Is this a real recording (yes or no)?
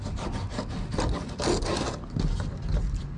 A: yes